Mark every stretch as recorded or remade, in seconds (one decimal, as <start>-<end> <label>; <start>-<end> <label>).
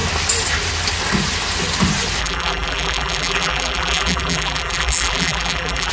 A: 0.0-2.2 recorded; 2.2-5.9 remade